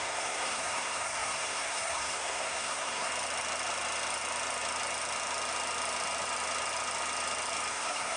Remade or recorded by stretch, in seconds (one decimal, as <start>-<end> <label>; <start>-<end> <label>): 0.0-3.1 remade; 3.1-7.7 recorded; 7.7-8.2 remade

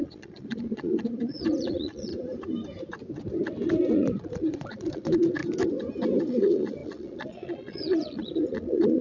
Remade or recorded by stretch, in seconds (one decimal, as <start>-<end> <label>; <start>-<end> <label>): 0.0-2.1 remade; 2.1-3.9 recorded; 3.9-5.4 remade; 5.4-6.2 recorded; 6.2-9.0 remade

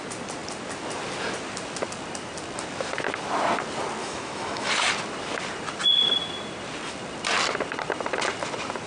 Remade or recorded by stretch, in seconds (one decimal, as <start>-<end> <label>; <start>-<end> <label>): 0.0-4.0 recorded; 4.0-4.7 remade; 4.7-8.9 recorded

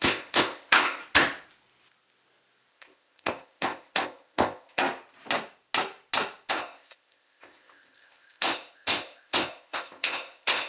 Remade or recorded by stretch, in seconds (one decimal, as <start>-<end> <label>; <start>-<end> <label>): 0.0-1.0 remade; 1.0-2.7 recorded; 2.7-4.8 remade; 4.8-6.5 recorded; 6.5-10.7 remade